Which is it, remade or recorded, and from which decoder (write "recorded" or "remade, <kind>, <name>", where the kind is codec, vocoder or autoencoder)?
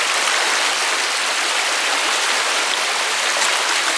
recorded